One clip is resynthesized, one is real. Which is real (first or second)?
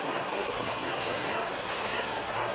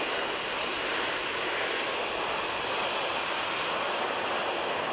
second